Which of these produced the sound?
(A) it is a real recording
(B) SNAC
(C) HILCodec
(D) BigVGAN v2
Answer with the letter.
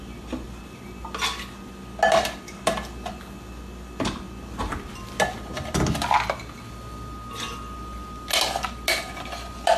A